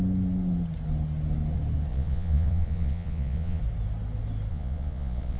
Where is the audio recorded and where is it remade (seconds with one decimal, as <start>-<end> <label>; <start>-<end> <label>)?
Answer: 0.0-1.9 recorded; 1.9-3.6 remade; 3.6-4.5 recorded; 4.5-5.4 remade